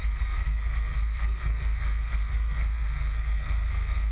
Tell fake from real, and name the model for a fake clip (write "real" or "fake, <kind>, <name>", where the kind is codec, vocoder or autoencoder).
fake, codec, SNAC